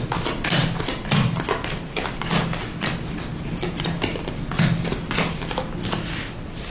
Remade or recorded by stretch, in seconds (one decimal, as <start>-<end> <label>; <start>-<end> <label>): 0.0-6.7 recorded

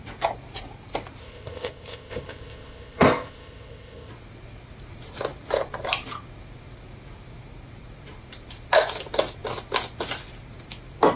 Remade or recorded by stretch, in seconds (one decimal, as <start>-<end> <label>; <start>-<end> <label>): 0.0-1.2 recorded; 1.2-4.1 remade; 4.1-11.2 recorded

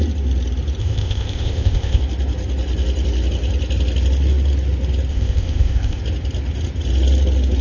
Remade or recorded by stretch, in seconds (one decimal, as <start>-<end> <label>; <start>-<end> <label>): 0.0-0.8 recorded; 0.8-2.0 remade; 2.0-5.1 recorded; 5.1-6.0 remade; 6.0-7.6 recorded

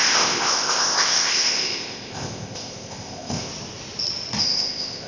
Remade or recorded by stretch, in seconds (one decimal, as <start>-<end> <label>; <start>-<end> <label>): 0.0-3.5 remade; 3.5-4.4 recorded; 4.4-5.1 remade

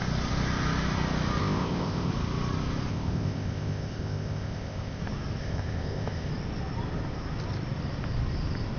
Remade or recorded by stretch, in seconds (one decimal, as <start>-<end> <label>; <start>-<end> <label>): 0.0-1.4 recorded; 1.4-2.1 remade; 2.1-2.9 recorded; 2.9-5.0 remade; 5.0-5.4 recorded; 5.4-6.3 remade; 6.3-8.8 recorded